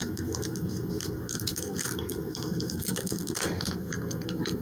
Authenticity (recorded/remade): remade